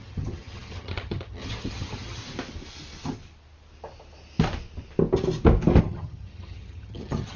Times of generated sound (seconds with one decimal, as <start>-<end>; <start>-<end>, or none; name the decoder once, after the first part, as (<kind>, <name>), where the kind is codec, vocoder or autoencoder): 0.0-2.2 (vocoder, HiFi-GAN); 5.8-7.4